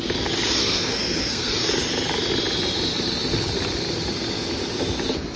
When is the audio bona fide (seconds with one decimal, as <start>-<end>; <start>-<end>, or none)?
0.0-0.6; 1.5-5.4